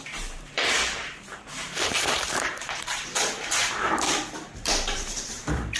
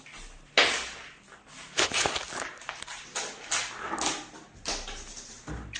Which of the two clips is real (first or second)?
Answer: second